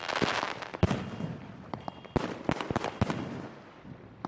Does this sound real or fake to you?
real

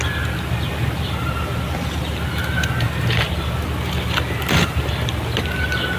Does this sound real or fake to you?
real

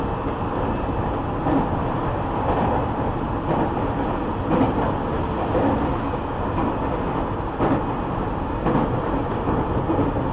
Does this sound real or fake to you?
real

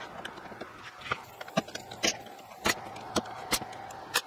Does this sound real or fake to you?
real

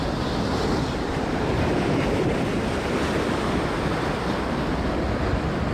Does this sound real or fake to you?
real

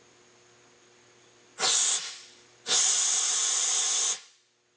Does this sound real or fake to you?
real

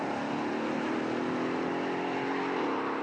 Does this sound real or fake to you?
fake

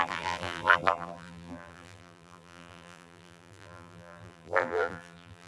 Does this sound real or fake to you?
fake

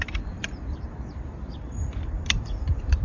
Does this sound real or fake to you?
fake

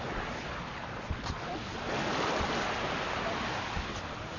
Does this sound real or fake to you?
real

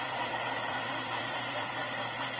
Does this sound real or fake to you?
fake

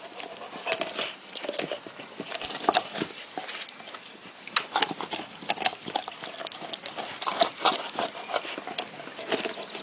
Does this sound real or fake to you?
real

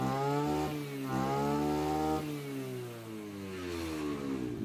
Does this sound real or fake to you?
real